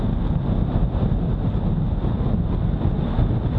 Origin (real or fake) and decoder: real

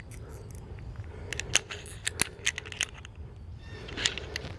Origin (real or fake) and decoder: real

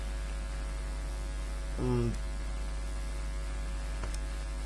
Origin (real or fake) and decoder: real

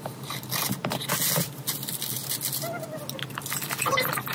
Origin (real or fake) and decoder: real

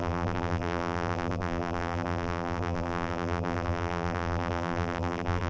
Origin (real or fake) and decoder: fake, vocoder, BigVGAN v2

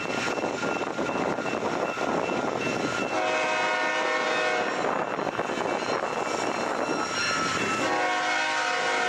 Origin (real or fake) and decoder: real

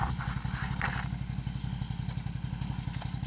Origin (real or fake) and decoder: real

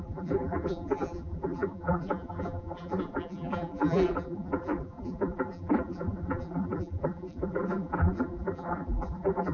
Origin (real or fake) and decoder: fake, vocoder, BigVGAN v2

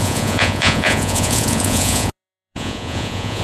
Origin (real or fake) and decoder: fake, vocoder, Vocos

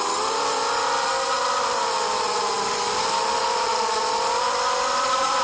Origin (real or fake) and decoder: fake, vocoder, BigVGAN v2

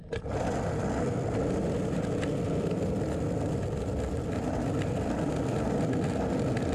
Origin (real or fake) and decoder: real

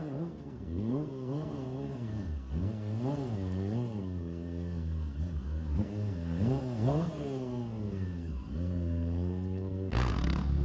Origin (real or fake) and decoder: fake, codec, SNAC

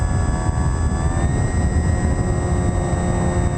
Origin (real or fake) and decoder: real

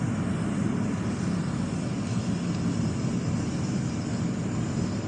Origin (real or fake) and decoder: real